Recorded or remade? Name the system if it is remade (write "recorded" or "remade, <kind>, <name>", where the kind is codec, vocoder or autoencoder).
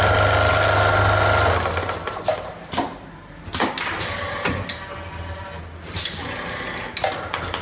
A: recorded